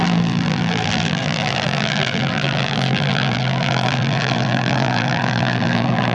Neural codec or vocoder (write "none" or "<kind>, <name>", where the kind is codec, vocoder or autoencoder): vocoder, BigVGAN v2